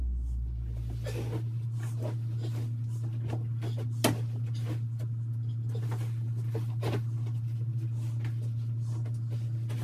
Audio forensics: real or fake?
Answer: real